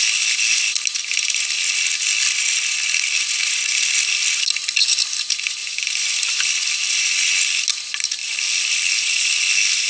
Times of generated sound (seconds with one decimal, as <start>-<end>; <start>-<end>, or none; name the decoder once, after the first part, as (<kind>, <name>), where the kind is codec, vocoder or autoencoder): none